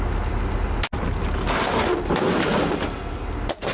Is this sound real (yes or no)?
yes